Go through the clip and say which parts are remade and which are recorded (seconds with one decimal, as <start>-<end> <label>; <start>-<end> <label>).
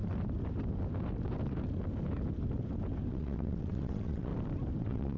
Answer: 0.0-3.1 recorded; 3.1-4.3 remade; 4.3-4.8 recorded; 4.8-5.2 remade